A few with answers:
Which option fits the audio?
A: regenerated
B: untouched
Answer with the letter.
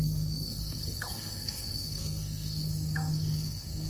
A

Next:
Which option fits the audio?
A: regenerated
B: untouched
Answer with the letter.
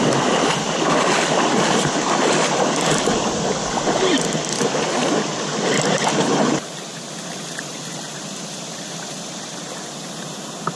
B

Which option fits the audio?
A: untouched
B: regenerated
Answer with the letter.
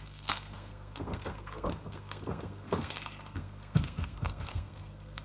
B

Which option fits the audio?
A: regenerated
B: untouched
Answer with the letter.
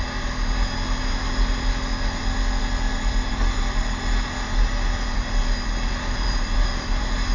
B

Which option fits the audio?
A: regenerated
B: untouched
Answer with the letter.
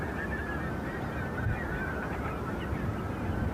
B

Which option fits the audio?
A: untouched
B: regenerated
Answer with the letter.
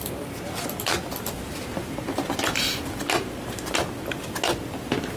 A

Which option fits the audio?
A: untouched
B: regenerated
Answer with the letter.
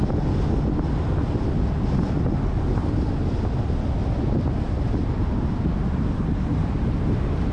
A